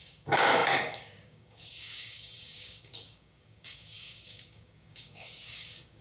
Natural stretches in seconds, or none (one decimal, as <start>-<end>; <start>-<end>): none